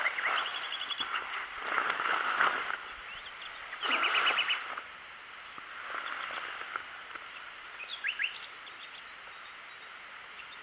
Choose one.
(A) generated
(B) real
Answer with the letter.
B